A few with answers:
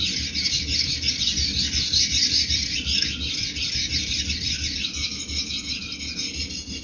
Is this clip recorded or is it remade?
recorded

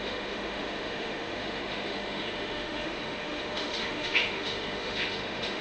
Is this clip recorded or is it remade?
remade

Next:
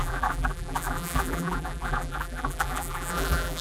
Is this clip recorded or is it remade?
remade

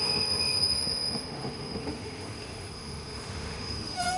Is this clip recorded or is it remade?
remade